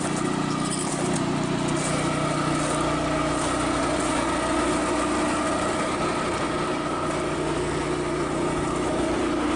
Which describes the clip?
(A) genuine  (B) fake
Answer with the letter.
A